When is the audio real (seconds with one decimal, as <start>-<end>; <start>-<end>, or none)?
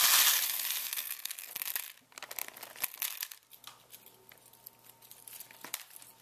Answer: 0.0-0.8; 1.5-6.2